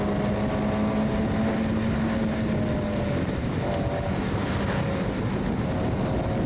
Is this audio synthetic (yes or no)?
no